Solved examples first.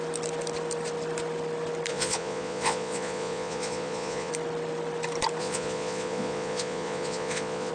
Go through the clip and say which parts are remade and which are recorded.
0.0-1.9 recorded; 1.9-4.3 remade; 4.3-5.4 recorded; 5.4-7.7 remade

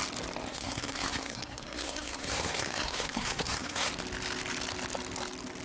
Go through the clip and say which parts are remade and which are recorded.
0.0-0.5 recorded; 0.5-3.9 remade; 3.9-5.6 recorded